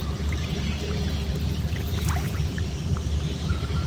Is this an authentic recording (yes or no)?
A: no